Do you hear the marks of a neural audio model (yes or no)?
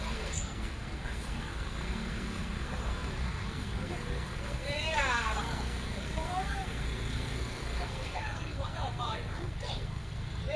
yes